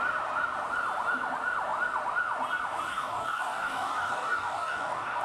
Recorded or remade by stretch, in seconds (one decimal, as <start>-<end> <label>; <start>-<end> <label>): 0.0-2.9 recorded; 2.9-5.2 remade